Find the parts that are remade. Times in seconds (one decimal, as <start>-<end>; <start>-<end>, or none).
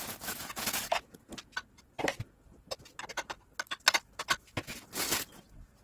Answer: 0.0-1.6; 4.0-5.8